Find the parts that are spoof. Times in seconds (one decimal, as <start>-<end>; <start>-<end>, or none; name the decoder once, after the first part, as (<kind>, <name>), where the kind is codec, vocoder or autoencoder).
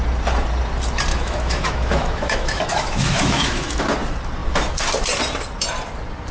1.1-3.8 (autoencoder, DAC-VAE)